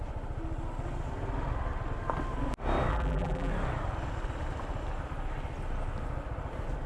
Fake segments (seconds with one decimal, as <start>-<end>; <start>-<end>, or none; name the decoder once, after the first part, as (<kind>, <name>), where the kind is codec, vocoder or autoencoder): 2.9-3.5 (vocoder, BigVGAN v2)